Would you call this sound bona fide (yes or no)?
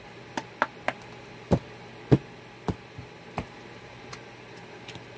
yes